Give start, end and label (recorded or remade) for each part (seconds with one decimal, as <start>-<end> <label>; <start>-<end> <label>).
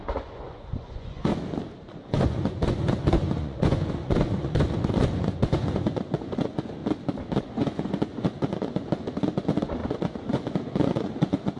0.0-1.3 remade; 1.3-1.9 recorded; 1.9-6.8 remade; 6.8-7.4 recorded; 7.4-11.6 remade